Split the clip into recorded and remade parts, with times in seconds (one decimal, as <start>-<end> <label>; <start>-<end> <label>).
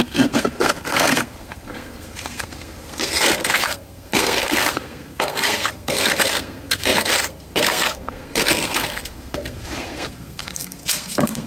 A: 0.0-11.5 remade